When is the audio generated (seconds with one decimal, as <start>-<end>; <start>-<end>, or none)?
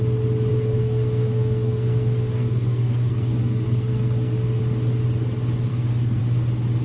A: 0.5-4.6; 5.7-6.2